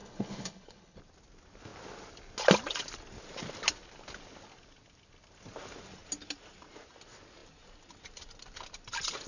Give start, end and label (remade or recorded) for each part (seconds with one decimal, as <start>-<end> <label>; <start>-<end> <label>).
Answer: 0.0-1.0 remade; 1.0-9.3 recorded